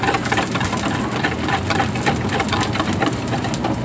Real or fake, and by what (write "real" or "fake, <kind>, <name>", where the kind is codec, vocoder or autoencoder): real